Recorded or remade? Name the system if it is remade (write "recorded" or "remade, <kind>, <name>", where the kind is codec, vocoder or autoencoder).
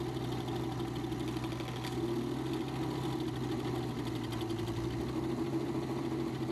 recorded